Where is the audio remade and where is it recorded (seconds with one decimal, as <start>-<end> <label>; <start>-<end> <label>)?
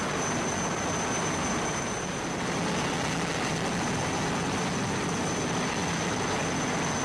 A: 0.0-7.0 recorded